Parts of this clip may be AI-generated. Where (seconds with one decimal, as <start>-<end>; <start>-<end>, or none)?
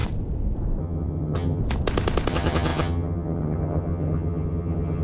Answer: 0.8-1.6; 2.3-5.0